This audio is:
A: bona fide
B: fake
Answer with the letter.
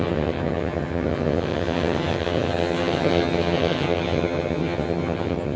B